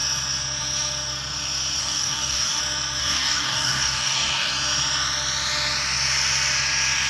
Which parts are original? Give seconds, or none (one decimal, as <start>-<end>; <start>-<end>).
0.0-1.8; 2.6-3.0; 4.5-7.1